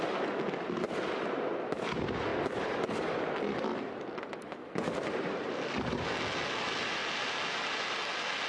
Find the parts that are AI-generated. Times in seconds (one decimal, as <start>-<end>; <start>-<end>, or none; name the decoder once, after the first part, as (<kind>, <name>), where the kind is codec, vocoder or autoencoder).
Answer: none